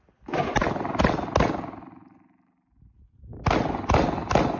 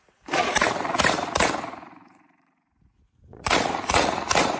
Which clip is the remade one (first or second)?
second